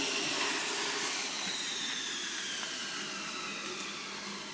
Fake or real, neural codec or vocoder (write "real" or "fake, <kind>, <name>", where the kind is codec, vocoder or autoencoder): real